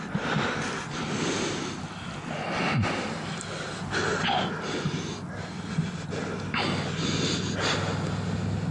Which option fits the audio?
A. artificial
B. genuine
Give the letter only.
B